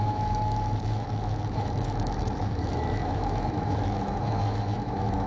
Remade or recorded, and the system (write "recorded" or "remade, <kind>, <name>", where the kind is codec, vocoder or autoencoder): remade, autoencoder, DAC-VAE